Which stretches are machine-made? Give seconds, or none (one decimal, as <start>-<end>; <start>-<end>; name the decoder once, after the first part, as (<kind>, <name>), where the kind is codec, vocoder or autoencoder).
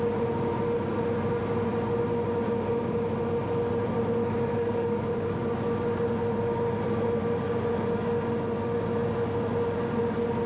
4.5-5.4 (codec, DAC)